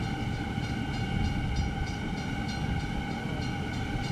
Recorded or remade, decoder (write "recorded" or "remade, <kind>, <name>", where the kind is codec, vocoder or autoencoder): recorded